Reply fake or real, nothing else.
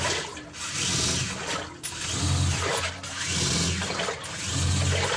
real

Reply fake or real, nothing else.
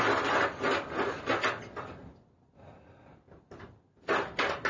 real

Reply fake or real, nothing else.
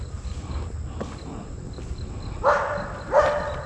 real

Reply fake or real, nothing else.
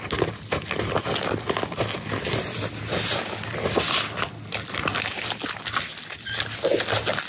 real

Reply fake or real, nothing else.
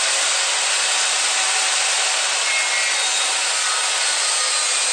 real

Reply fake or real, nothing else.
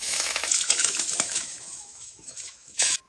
fake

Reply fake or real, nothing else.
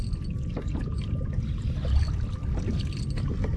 real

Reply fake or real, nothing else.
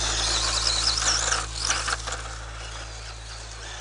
real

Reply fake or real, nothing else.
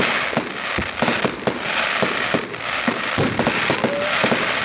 real